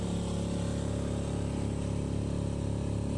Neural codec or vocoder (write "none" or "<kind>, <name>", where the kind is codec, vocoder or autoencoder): none